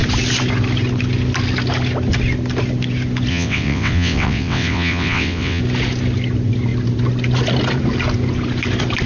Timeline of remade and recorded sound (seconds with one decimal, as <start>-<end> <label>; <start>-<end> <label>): 0.0-3.3 recorded; 3.3-5.6 remade; 5.6-9.1 recorded